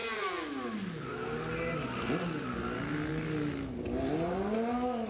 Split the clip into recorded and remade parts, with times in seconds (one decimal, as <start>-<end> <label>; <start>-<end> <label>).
0.0-5.1 recorded

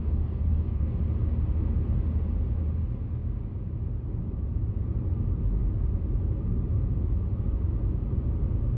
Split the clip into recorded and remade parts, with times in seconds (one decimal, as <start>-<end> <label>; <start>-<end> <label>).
0.0-1.0 remade; 1.0-8.8 recorded

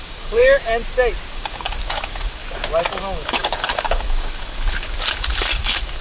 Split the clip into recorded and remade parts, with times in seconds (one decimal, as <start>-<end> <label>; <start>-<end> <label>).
0.0-0.7 remade; 0.7-1.3 recorded; 1.3-2.4 remade; 2.4-3.0 recorded; 3.0-6.0 remade